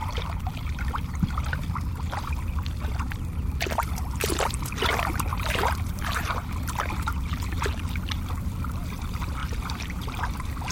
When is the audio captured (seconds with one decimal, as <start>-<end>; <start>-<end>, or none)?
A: 1.1-5.3; 6.5-9.4; 10.2-10.7

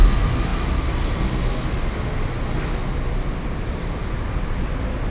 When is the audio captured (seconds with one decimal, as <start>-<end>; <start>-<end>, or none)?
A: 0.5-3.6

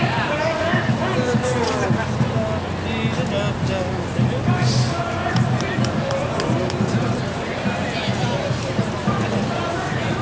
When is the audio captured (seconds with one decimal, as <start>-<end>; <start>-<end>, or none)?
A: 1.0-6.0

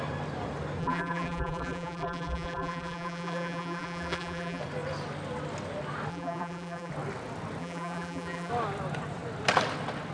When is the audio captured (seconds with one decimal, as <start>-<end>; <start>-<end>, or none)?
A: 0.0-0.8; 4.6-6.1; 6.9-7.6; 8.5-10.1

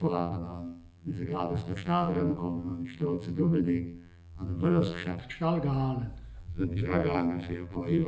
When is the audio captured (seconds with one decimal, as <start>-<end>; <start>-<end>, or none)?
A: 5.2-6.4